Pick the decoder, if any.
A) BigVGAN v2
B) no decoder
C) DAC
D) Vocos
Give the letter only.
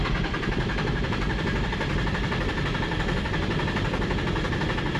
A